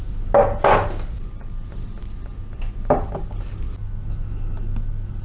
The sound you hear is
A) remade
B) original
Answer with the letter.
B